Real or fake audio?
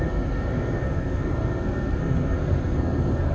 fake